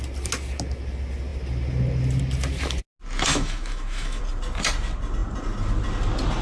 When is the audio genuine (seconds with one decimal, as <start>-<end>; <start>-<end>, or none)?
0.0-3.3; 4.2-6.4